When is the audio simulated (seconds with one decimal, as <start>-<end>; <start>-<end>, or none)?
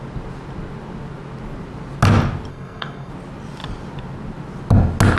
2.5-3.1